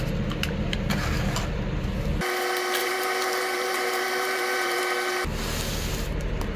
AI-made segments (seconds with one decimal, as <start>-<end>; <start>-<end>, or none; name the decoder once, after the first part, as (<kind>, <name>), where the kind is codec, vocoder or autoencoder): 2.8-4.8 (vocoder, BigVGAN v2)